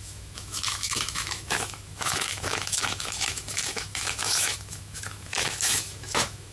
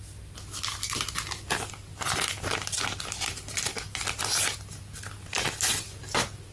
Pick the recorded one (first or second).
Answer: second